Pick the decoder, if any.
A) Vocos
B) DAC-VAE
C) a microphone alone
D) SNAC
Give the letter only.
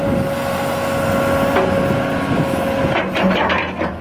C